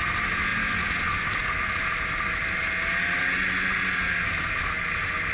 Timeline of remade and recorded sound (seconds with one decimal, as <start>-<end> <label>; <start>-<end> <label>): 0.0-5.3 recorded